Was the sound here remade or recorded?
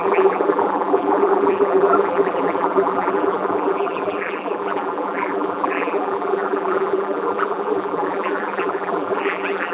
remade